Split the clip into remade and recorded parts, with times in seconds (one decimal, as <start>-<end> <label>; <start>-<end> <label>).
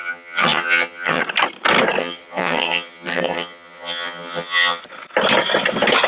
0.0-1.2 remade; 1.2-2.0 recorded; 2.0-4.8 remade; 4.8-6.1 recorded